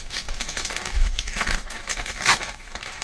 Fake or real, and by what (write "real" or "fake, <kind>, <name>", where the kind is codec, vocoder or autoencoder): fake, codec, DAC